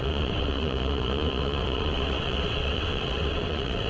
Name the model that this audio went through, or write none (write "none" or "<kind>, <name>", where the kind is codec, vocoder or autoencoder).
vocoder, WaveNeXt